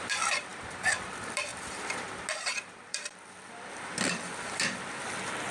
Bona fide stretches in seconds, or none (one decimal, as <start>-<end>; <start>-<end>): 0.5-1.0; 1.5-2.8; 3.9-5.0